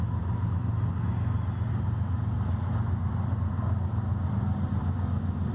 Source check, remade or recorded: recorded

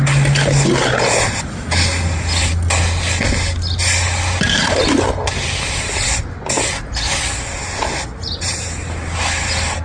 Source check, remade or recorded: recorded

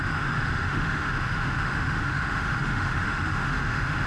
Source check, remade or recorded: remade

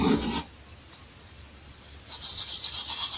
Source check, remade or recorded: recorded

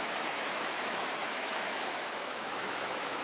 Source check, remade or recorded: remade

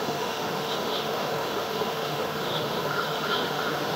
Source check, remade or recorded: remade